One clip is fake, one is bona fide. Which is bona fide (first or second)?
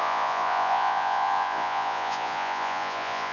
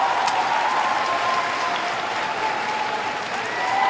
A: second